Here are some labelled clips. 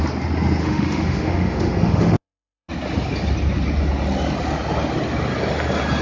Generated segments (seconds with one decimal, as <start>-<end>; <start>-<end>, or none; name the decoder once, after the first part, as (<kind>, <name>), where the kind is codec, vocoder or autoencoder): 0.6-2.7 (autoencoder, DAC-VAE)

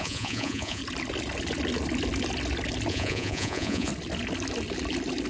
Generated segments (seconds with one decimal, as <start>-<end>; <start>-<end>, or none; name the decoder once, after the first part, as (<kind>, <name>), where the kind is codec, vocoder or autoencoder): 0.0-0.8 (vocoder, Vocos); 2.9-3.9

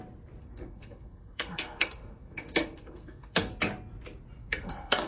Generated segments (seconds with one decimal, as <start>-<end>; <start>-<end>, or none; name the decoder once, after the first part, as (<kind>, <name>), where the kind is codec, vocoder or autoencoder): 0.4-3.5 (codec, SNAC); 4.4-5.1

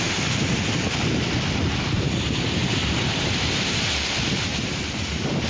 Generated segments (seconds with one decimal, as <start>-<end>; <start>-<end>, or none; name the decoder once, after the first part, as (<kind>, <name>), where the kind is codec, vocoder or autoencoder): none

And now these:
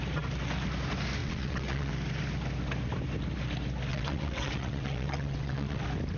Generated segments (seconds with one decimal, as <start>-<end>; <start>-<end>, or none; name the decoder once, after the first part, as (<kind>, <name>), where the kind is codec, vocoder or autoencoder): 1.2-1.9 (vocoder, WaveNeXt); 3.9-5.8

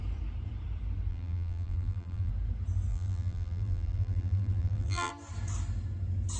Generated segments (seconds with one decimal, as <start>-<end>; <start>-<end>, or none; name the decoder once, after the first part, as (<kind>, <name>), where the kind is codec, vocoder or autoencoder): 1.1-2.3 (vocoder, BigVGAN v2); 2.9-5.1